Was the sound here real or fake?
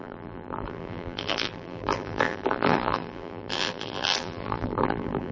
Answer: fake